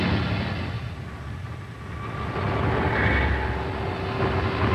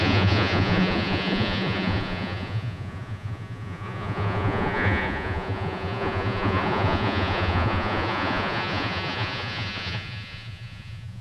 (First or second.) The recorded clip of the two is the first